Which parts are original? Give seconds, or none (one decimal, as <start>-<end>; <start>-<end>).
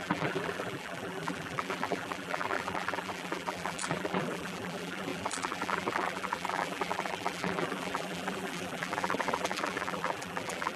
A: none